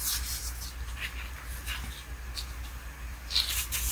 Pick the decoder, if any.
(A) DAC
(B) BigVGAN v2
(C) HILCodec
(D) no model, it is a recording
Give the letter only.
D